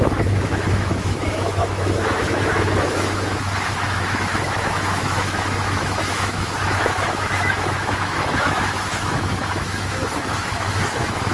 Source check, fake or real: fake